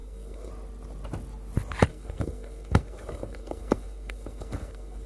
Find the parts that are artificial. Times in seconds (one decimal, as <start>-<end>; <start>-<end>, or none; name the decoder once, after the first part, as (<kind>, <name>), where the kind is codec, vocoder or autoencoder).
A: 0.0-0.5 (codec, SNAC); 1.9-5.1